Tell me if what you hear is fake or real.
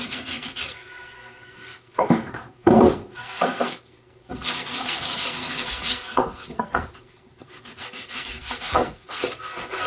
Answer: fake